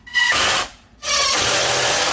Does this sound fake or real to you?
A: real